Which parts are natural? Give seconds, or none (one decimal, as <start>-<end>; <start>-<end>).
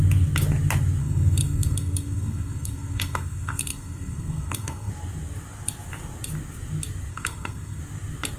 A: 0.0-1.0; 4.9-7.1; 7.8-8.4